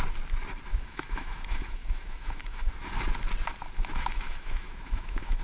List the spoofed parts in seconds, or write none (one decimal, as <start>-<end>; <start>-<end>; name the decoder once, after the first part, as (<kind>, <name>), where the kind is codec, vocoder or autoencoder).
0.7-2.7 (autoencoder, DAC-VAE); 3.8-5.4